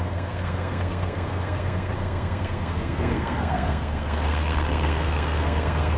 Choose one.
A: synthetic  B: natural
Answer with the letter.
A